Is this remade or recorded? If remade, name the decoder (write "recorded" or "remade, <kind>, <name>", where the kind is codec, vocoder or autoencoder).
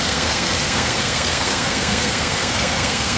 remade, codec, SNAC